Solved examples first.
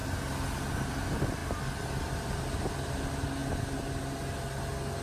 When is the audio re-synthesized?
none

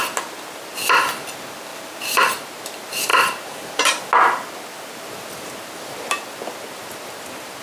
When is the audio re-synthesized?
1.7-2.3 (vocoder, BigVGAN v2); 3.1-4.0

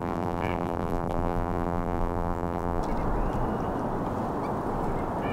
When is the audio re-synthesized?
0.0-2.8 (vocoder, BigVGAN v2)

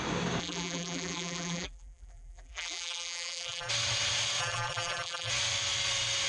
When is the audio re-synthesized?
0.4-3.7 (vocoder, BigVGAN v2); 4.4-5.3

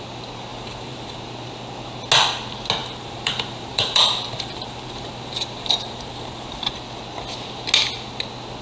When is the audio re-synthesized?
0.5-1.2 (vocoder, BigVGAN v2); 2.8-6.7

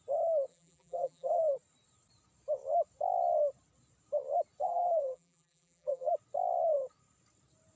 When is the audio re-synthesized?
0.5-1.4 (vocoder, BigVGAN v2); 4.6-6.1

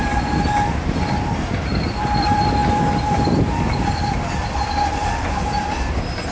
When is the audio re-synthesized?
0.0-6.3 (vocoder, BigVGAN v2)